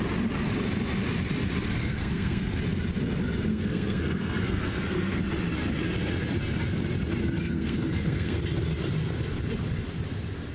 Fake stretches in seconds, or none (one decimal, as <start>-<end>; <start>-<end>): 1.8-2.4; 3.5-5.2; 7.4-8.4